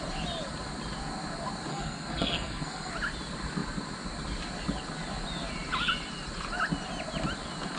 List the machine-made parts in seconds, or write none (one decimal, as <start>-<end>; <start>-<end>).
1.7-2.9